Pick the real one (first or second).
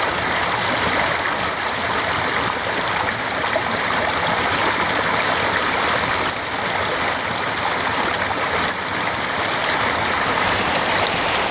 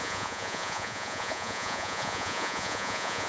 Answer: first